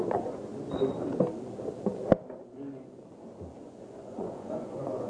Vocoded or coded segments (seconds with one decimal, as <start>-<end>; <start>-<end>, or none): 0.0-0.5; 3.6-5.1